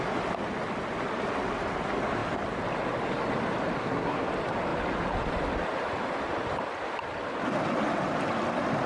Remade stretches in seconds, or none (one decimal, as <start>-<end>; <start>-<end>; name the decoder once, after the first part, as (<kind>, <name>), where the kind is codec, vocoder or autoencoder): 3.8-4.3 (codec, SNAC)